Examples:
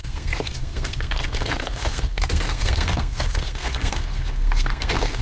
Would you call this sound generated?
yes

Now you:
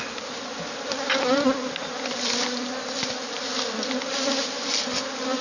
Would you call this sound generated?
no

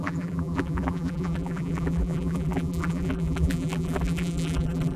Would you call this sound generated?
yes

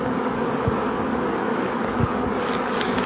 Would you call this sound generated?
yes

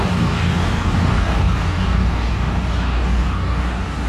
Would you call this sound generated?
yes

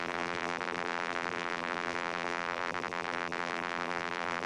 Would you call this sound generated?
yes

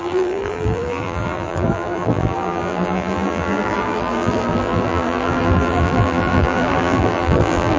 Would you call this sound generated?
yes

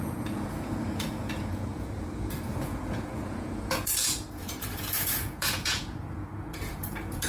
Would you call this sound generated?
yes